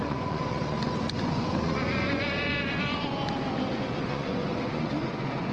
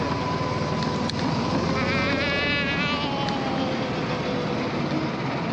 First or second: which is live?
second